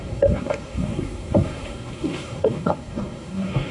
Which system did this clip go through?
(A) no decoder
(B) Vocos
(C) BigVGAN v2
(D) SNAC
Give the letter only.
D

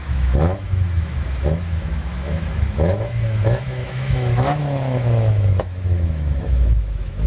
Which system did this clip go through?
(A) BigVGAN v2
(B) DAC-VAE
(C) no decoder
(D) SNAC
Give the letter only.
B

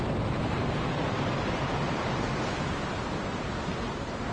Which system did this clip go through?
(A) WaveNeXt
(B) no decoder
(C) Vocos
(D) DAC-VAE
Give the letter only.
B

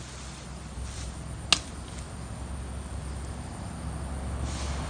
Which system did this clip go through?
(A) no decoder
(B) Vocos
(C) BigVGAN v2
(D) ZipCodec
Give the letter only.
A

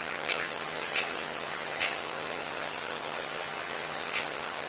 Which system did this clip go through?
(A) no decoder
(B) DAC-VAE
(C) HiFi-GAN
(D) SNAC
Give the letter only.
C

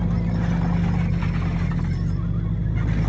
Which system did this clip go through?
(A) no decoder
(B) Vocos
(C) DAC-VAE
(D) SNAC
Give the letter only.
A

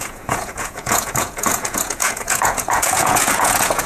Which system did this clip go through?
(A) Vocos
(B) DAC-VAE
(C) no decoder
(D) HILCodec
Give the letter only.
A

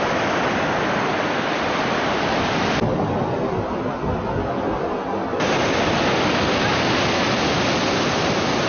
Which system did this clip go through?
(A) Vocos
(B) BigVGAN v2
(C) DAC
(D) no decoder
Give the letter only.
D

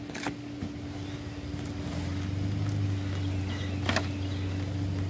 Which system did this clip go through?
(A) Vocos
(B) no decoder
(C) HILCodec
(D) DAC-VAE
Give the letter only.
B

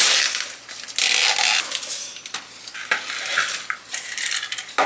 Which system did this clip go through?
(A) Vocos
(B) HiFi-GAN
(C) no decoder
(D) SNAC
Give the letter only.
C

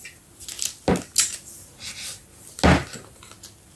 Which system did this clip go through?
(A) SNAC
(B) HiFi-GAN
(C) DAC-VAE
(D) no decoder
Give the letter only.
D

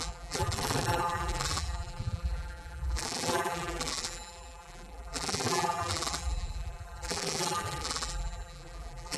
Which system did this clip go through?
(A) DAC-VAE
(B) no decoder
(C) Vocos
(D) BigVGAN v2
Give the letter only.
D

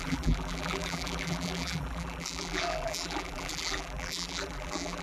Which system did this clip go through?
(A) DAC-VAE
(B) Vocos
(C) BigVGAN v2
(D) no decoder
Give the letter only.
C